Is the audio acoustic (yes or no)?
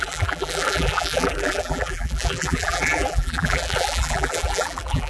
no